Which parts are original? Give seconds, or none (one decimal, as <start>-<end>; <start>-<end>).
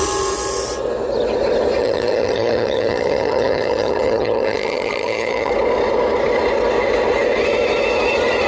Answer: 0.0-1.8; 5.5-8.5